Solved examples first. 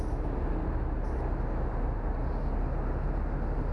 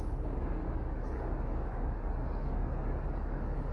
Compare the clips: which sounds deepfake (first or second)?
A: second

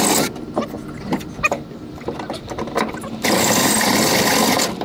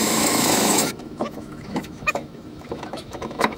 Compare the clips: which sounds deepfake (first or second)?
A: second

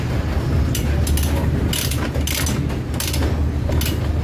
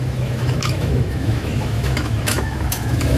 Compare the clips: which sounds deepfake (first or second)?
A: second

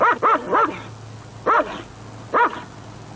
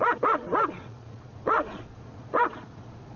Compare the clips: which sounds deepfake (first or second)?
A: second